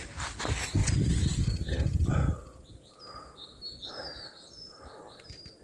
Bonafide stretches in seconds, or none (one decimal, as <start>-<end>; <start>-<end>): 0.0-0.8; 1.5-5.6